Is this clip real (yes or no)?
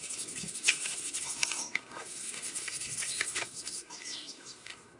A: no